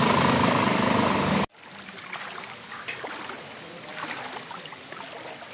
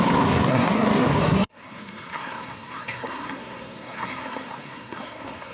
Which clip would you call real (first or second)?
first